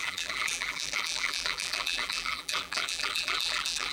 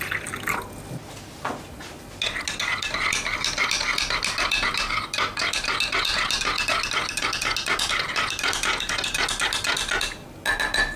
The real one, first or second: second